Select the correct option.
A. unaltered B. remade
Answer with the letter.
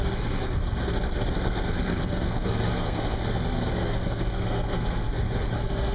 B